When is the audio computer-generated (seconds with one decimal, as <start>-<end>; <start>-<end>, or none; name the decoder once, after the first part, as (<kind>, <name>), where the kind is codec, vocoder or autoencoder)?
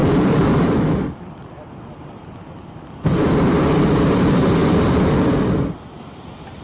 none